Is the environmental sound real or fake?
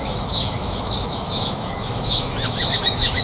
fake